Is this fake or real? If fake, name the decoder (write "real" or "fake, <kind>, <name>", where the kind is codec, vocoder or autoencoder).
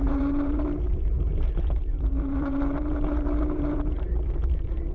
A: fake, vocoder, BigVGAN v2